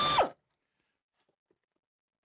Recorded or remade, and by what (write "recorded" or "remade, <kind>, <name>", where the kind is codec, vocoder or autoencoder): recorded